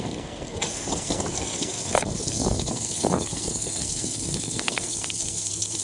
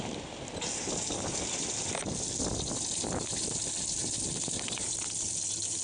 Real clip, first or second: second